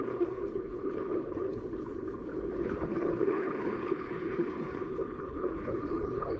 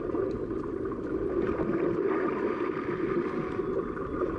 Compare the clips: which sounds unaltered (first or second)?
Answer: second